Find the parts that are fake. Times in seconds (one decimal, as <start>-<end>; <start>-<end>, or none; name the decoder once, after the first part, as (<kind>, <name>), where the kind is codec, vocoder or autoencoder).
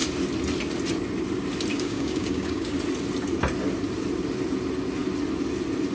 1.7-2.8 (codec, DAC)